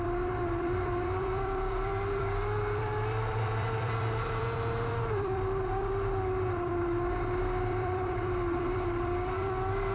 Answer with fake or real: fake